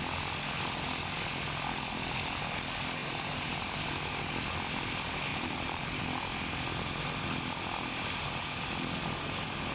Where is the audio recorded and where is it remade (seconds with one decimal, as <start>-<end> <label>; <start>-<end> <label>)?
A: 0.0-3.0 recorded; 3.0-3.9 remade; 3.9-5.3 recorded; 5.3-6.0 remade; 6.0-7.9 recorded; 7.9-8.4 remade; 8.4-9.7 recorded